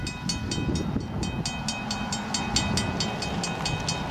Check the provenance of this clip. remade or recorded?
recorded